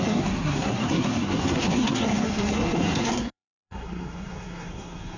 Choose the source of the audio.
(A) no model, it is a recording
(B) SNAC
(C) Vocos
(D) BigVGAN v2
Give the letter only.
B